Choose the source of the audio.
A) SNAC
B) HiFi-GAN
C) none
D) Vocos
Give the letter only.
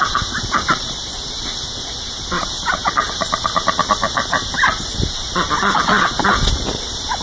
C